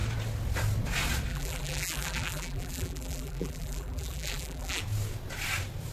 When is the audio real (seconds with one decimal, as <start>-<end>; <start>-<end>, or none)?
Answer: 0.0-1.3; 4.8-5.9